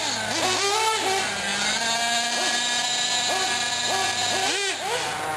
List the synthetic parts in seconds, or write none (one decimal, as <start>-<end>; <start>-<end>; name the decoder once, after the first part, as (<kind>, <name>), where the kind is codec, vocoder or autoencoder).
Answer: none